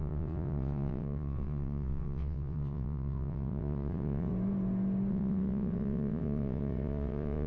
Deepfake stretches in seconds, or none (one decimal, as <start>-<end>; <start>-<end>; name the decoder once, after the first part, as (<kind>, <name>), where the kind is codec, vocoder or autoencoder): 0.0-4.3 (vocoder, WaveNeXt); 5.1-7.5